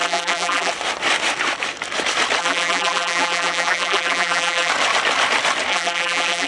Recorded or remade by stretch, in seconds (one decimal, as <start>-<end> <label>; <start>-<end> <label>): 0.0-0.7 remade; 0.7-2.4 recorded; 2.4-4.7 remade; 4.7-5.7 recorded; 5.7-6.5 remade